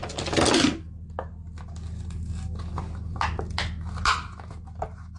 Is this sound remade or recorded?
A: recorded